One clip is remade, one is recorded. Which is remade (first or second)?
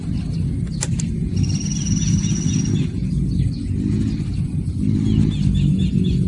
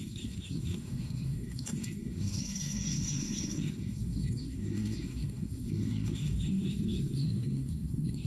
second